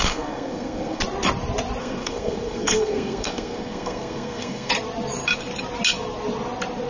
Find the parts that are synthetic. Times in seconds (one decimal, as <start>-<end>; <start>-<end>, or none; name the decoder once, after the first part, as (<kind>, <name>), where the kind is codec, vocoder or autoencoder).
0.0-1.0 (codec, SNAC); 1.8-4.7